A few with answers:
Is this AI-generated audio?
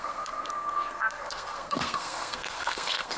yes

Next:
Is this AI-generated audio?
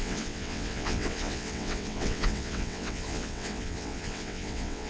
yes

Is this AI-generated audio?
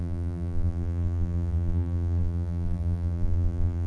yes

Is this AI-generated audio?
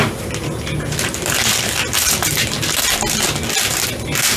no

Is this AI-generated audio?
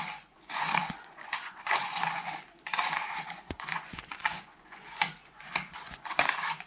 yes